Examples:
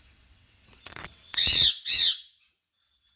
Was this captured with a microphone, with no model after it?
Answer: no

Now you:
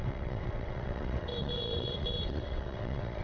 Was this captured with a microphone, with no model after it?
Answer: no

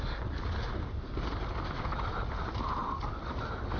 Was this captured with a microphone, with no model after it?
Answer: yes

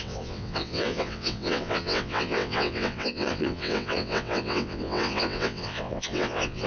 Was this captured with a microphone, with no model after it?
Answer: no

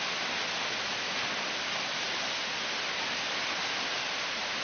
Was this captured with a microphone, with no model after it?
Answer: yes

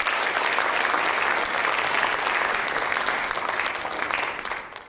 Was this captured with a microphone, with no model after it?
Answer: yes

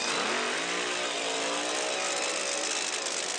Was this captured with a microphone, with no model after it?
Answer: yes